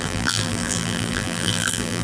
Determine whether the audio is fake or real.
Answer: fake